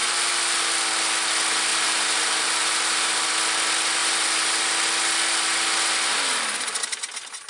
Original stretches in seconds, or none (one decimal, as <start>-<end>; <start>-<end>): 0.0-1.7; 3.3-4.0; 4.7-7.5